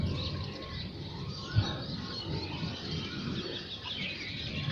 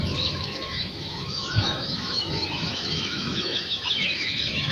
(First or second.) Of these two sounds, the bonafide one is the first